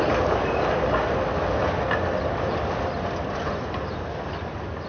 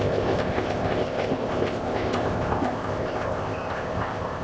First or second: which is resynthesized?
second